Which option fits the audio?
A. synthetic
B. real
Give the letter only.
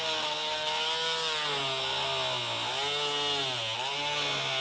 B